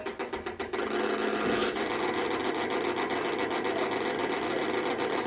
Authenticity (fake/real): real